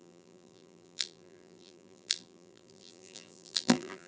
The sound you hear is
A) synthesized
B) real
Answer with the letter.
A